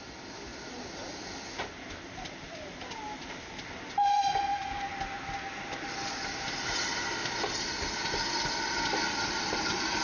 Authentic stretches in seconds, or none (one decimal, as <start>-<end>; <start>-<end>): 0.0-10.0